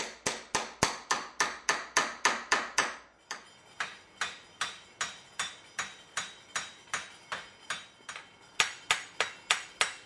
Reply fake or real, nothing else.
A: real